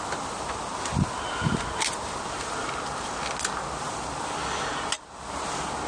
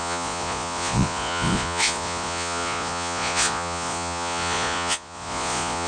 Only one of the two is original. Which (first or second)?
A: first